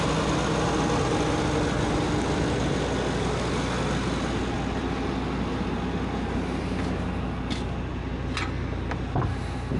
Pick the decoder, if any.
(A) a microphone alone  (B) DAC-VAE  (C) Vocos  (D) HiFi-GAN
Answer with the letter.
A